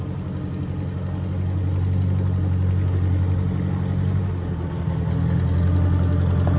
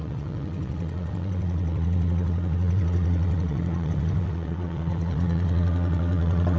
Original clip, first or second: first